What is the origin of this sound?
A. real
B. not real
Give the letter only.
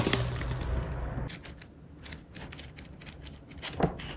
A